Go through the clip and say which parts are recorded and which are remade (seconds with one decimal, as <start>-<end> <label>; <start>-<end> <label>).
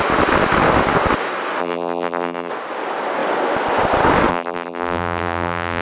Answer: 0.0-1.6 recorded; 1.6-2.5 remade; 2.5-4.3 recorded; 4.3-5.8 remade